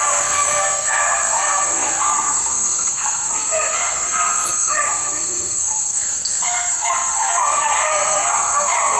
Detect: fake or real fake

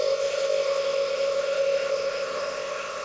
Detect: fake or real fake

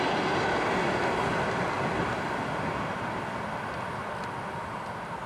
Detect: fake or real real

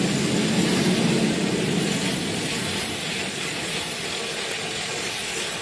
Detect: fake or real real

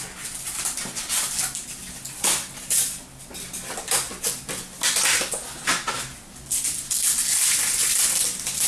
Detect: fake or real real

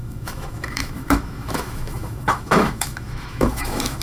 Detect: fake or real fake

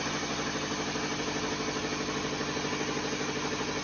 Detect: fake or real real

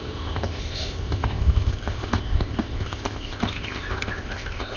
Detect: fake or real fake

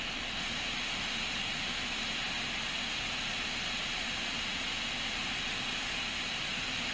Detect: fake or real real